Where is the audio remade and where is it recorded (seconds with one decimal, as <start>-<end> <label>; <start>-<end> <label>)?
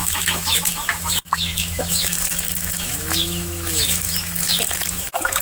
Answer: 0.0-5.4 remade